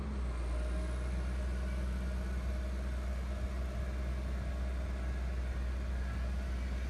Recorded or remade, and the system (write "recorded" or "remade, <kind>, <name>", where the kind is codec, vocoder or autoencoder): recorded